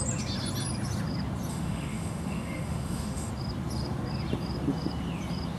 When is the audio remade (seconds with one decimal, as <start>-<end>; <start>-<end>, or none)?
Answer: 1.5-3.3